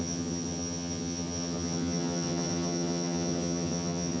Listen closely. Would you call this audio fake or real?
fake